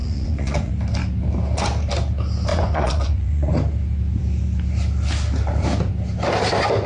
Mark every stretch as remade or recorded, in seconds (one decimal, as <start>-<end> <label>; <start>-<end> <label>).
0.0-0.7 remade; 0.7-2.5 recorded; 2.5-3.5 remade; 3.5-6.9 recorded